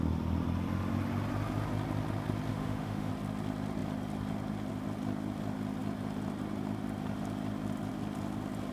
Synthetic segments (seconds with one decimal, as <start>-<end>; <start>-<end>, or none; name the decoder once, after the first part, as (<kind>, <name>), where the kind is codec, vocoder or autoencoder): 2.5-3.1 (autoencoder, DAC-VAE)